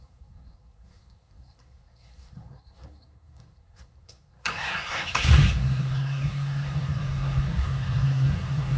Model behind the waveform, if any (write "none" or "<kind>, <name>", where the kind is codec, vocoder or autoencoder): codec, SNAC